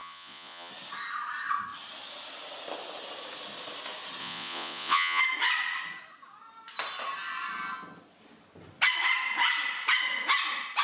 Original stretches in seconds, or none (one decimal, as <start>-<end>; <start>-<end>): 0.7-4.2; 5.2-10.8